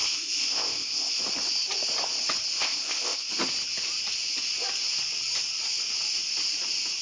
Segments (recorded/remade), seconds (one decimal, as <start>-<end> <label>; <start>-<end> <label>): 0.0-1.2 remade; 1.2-2.6 recorded; 2.6-3.3 remade; 3.3-7.0 recorded